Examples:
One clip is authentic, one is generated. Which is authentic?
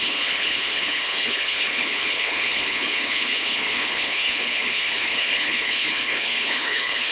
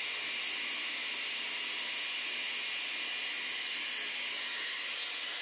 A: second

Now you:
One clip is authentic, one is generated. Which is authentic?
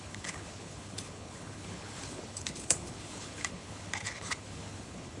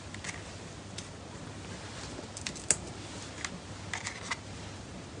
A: second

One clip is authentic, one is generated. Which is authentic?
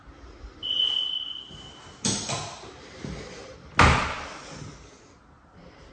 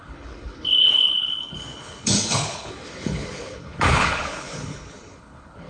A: first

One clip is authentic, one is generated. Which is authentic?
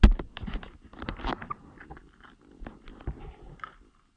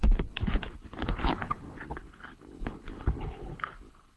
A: first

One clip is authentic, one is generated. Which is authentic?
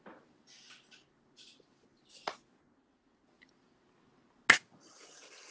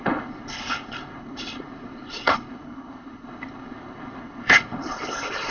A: first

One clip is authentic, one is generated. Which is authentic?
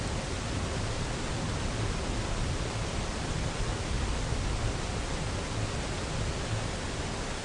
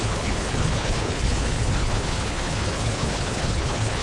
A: first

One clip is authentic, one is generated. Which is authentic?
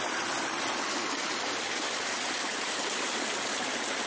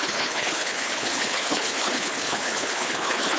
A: first